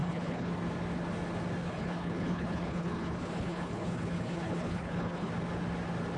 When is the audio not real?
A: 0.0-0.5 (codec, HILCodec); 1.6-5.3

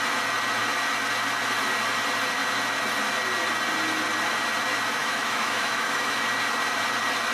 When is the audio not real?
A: 5.0-6.2 (autoencoder, DAC-VAE)

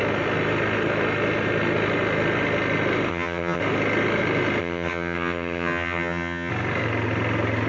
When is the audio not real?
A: 3.1-3.6 (vocoder, HiFi-GAN); 4.6-6.5

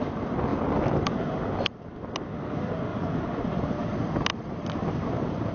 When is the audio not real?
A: 2.9-3.6 (vocoder, Vocos)